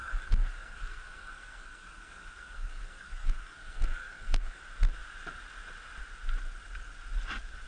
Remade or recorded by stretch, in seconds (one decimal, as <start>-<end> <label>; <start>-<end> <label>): 0.0-4.6 remade; 4.6-7.7 recorded